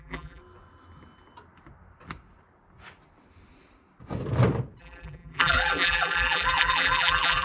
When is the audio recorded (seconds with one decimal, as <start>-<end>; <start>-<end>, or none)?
0.4-4.8